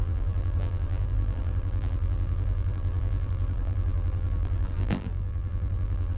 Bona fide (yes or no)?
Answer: no